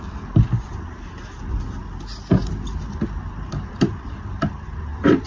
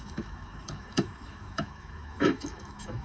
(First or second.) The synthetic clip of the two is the second